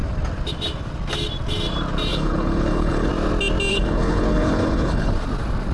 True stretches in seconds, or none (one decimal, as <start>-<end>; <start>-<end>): 0.0-2.1; 3.1-3.7; 5.1-5.7